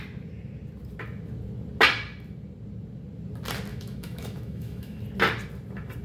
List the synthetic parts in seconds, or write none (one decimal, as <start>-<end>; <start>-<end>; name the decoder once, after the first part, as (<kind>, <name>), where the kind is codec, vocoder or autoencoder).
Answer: 3.7-5.0 (autoencoder, DAC-VAE)